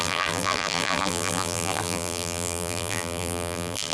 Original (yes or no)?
no